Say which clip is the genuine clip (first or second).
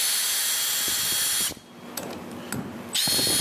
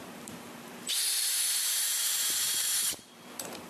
first